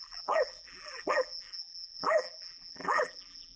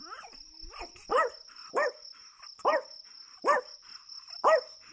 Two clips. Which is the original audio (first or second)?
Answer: second